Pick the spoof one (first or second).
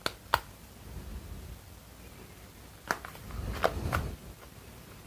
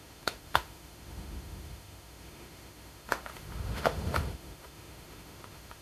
second